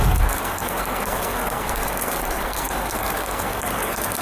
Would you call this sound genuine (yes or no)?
no